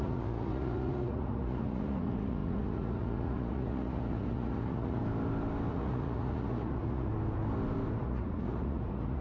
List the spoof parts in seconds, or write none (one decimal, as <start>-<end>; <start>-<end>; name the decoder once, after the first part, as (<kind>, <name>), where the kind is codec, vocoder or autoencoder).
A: 0.0-5.0 (vocoder, Vocos); 5.7-7.1; 8.0-9.2